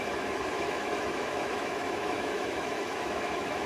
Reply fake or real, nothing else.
fake